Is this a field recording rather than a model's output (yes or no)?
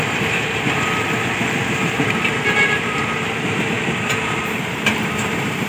no